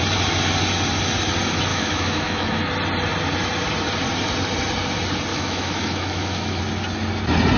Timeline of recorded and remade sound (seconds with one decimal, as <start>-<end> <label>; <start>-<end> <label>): 0.0-1.7 recorded; 1.7-2.7 remade; 2.7-5.3 recorded; 5.3-6.6 remade; 6.6-7.6 recorded